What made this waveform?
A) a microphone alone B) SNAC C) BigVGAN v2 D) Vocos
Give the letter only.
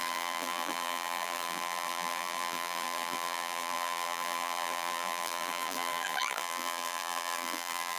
C